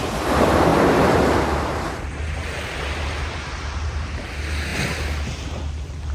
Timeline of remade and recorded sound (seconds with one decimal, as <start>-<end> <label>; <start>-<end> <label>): 0.0-0.7 recorded; 0.7-4.2 remade; 4.2-6.1 recorded